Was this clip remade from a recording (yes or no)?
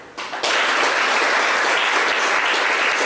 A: no